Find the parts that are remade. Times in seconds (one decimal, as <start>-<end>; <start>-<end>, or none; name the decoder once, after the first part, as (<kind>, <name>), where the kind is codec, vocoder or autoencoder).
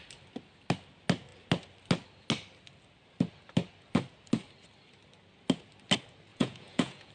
6.3-7.1 (vocoder, Vocos)